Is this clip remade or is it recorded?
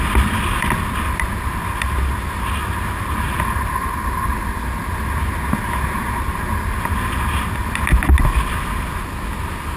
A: recorded